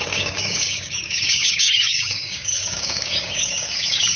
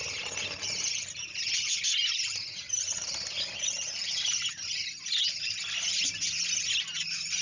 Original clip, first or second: second